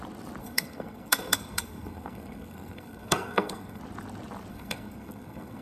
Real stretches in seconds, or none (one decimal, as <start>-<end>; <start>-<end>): 0.0-0.4; 3.8-4.5